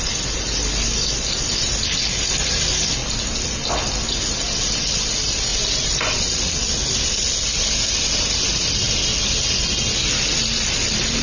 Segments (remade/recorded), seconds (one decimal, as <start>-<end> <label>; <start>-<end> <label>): 0.0-11.2 recorded